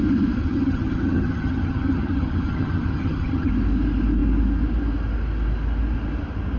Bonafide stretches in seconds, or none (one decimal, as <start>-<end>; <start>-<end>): 0.0-0.4; 3.5-6.6